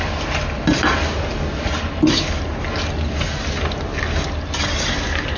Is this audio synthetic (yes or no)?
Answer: no